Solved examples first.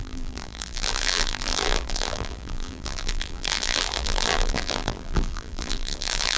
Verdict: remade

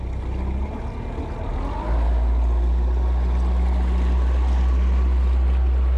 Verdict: recorded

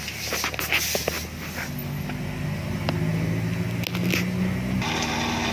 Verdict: recorded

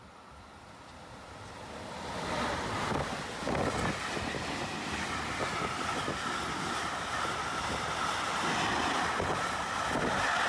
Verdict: recorded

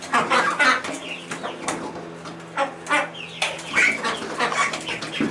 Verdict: recorded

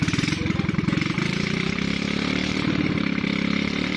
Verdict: remade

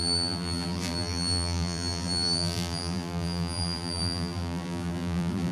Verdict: remade